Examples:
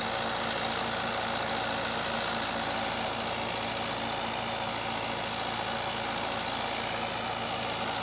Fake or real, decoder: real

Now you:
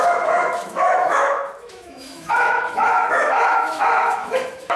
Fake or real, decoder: fake, autoencoder, DAC-VAE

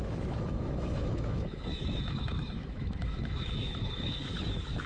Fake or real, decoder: fake, autoencoder, DAC-VAE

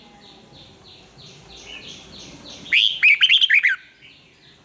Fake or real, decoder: real